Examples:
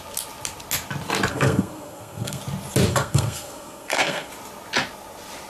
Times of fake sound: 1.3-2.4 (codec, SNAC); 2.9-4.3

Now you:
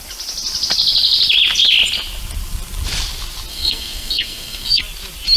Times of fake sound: 3.5-4.8 (codec, SNAC)

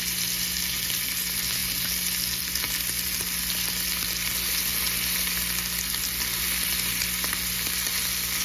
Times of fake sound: none

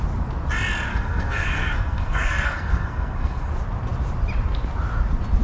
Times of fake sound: 0.9-3.5 (codec, SNAC)

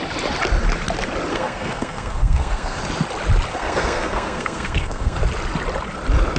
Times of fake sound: 1.3-2.8 (codec, SNAC); 3.5-5.2

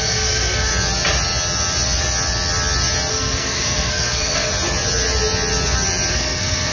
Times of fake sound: 0.0-0.7 (codec, SNAC); 3.1-4.5; 6.1-6.7

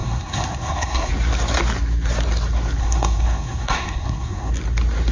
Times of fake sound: 0.0-1.1 (codec, SNAC); 2.8-4.5

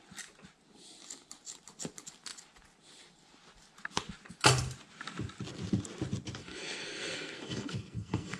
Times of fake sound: 6.4-8.4 (codec, SNAC)